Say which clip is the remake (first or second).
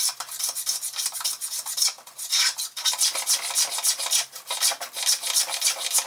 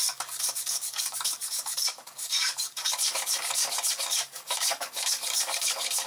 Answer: second